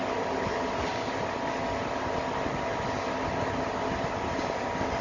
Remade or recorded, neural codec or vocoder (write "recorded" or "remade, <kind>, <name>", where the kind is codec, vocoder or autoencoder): recorded